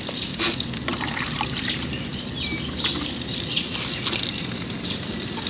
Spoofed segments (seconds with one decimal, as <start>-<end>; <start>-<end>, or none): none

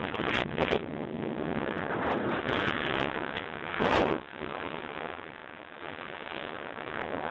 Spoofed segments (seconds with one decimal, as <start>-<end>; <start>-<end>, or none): 0.0-1.9; 2.4-7.3

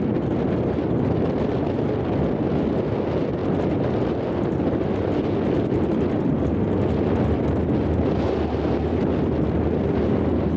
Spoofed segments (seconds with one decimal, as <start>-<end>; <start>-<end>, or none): none

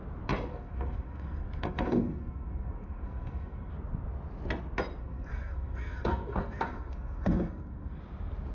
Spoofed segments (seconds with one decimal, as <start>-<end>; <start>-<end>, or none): 0.5-3.7; 5.0-8.0